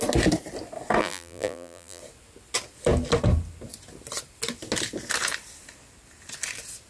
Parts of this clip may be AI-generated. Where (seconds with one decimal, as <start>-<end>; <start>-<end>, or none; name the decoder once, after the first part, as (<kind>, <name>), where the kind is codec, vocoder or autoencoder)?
1.0-2.0 (vocoder, BigVGAN v2)